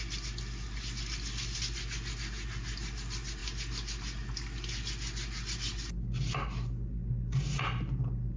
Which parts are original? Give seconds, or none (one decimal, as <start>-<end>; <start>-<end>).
0.0-8.4